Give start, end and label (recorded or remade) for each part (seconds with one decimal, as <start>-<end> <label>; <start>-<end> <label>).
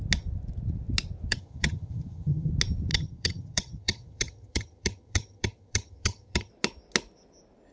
0.0-1.3 recorded; 1.3-2.5 remade; 2.5-2.9 recorded; 2.9-6.5 remade; 6.5-7.7 recorded